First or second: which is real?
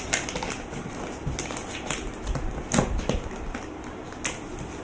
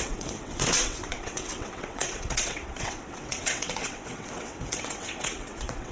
first